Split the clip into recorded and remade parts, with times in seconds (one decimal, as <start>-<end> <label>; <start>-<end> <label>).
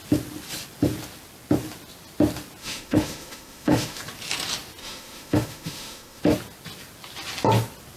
0.0-2.6 recorded; 2.6-4.0 remade; 4.0-4.8 recorded; 4.8-6.2 remade; 6.2-8.0 recorded